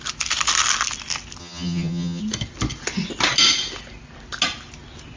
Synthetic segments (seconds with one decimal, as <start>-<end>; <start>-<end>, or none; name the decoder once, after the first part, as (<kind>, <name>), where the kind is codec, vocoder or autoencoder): 1.4-2.2 (vocoder, HiFi-GAN)